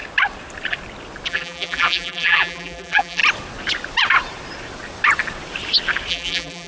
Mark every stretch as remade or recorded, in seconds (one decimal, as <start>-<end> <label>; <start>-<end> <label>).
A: 0.0-1.3 recorded; 1.3-3.2 remade; 3.2-6.1 recorded; 6.1-6.7 remade